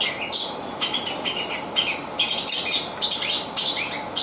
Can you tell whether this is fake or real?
real